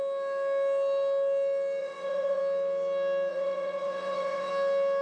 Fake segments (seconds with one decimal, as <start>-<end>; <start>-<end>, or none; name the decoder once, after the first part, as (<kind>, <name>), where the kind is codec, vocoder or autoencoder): 1.8-2.4 (vocoder, WaveNeXt); 3.3-4.5